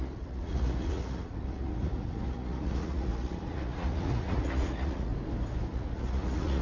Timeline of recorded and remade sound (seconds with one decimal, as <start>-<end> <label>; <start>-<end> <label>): 0.0-5.1 remade; 5.1-5.7 recorded; 5.7-6.6 remade